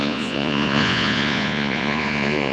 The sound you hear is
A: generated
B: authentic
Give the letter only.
A